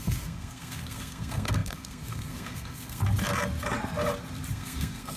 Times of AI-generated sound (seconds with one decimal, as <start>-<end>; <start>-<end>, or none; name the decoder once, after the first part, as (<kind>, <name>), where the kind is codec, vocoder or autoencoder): 0.0-3.0 (codec, SNAC); 4.5-5.2